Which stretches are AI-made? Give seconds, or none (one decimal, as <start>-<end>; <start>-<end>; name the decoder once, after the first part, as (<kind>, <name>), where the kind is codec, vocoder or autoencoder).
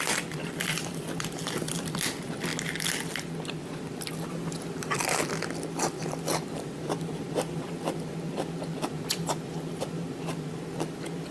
0.0-2.5 (vocoder, BigVGAN v2); 3.6-5.0; 5.8-11.3